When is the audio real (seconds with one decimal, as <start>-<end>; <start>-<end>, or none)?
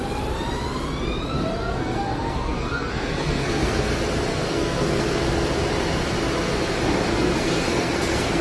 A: 0.0-1.5; 3.9-4.3; 5.2-7.1